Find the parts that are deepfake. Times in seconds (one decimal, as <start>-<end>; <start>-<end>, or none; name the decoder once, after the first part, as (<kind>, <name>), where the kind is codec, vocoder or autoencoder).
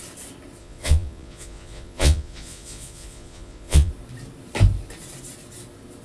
0.6-3.9 (vocoder, Vocos)